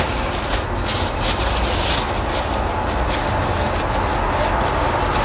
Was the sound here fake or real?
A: real